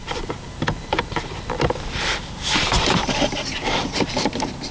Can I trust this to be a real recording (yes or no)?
no